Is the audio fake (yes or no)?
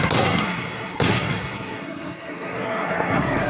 yes